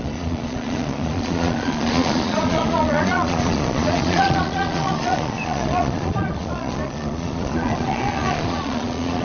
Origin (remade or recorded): remade